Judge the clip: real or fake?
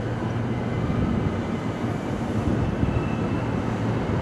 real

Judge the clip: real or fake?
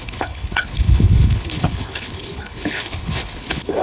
fake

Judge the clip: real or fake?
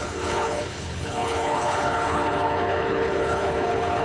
fake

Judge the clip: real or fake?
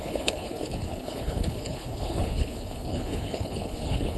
fake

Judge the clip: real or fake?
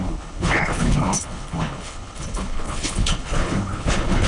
fake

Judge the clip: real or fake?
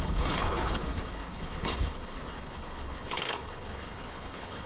fake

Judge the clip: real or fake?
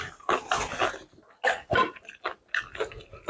real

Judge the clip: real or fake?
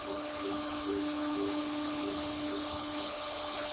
fake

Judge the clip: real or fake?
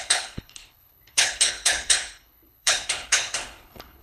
fake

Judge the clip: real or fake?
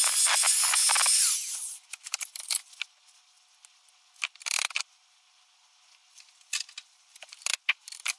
real